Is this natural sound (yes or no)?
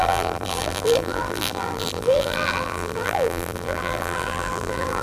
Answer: no